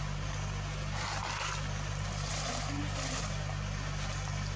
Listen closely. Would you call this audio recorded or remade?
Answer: recorded